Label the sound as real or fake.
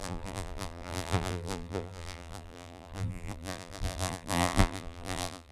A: fake